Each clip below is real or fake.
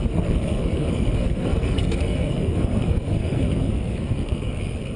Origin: fake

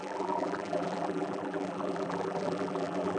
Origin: fake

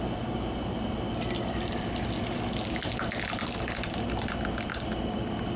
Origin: real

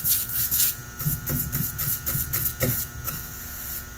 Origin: real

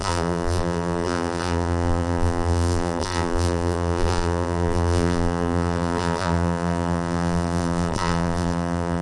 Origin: fake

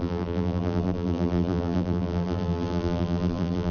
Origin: fake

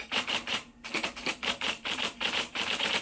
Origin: fake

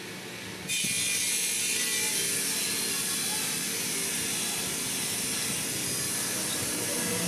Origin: real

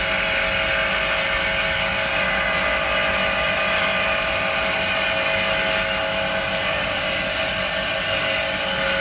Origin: real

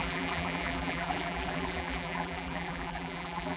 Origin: fake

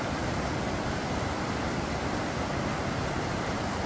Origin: real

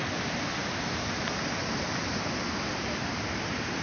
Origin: real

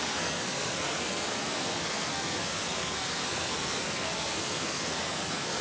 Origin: fake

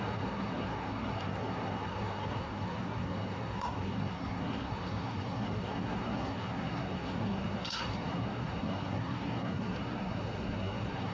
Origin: fake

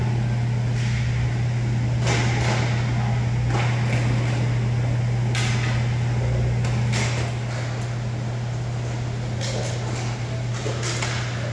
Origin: real